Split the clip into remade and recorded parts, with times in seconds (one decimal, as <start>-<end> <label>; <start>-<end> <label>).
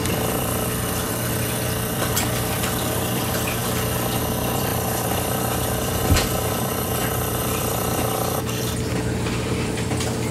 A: 0.0-3.6 remade; 3.6-4.2 recorded; 4.2-10.3 remade